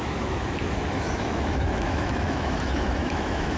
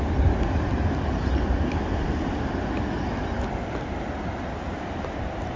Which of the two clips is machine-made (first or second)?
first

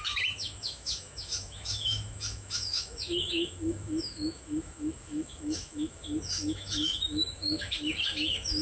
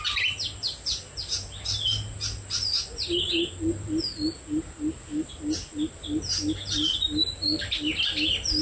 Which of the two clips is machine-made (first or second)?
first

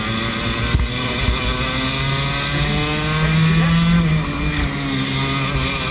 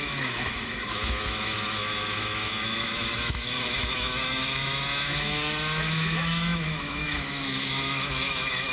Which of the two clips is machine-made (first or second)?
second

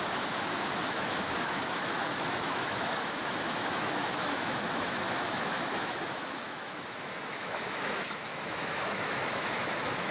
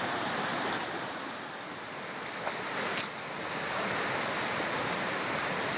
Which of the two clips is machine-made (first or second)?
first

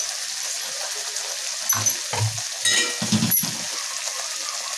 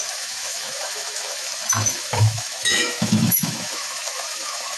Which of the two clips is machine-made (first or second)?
second